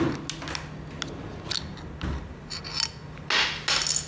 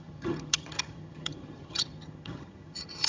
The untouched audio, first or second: first